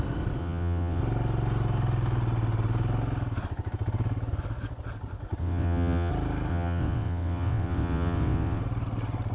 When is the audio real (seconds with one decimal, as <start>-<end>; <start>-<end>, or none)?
0.0-0.4; 1.0-5.4; 6.1-6.5; 8.6-9.3